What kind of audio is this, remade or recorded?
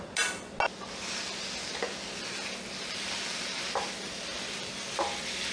recorded